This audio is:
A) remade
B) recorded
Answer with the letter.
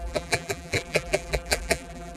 A